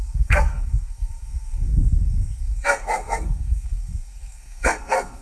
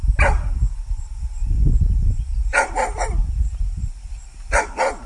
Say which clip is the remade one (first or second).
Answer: first